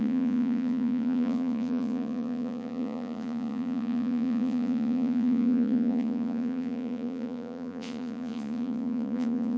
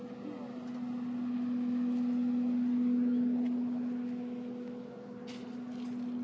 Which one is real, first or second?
second